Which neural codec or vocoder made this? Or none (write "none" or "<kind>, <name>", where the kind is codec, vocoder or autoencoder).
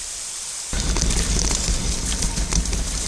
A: none